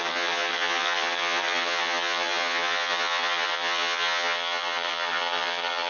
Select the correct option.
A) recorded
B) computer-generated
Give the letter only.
B